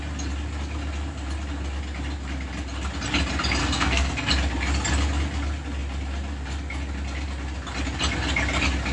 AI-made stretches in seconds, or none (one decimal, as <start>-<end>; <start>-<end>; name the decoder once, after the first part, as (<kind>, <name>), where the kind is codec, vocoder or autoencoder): 3.6-4.3 (codec, SNAC)